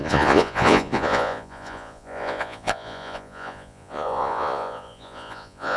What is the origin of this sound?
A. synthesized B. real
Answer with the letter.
A